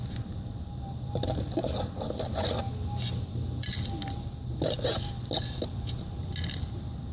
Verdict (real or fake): real